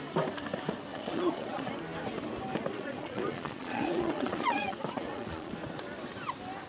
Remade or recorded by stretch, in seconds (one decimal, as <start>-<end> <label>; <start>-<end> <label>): 0.0-0.9 recorded; 0.9-1.7 remade; 1.7-2.7 recorded; 2.7-5.5 remade; 5.5-6.7 recorded